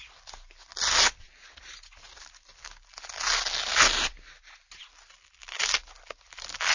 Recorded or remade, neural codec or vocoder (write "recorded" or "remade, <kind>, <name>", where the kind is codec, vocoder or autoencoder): recorded